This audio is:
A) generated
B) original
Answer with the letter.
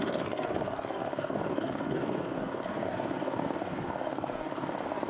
A